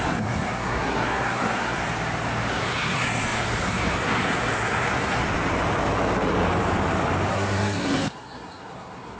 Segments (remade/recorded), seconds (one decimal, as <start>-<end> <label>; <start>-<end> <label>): 0.0-1.8 remade; 1.8-2.5 recorded; 2.5-5.2 remade; 5.2-7.3 recorded; 7.3-9.2 remade